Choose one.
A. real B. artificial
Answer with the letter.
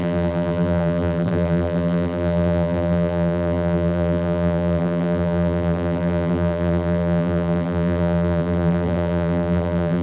B